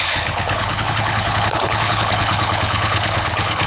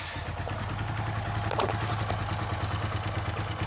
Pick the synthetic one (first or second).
first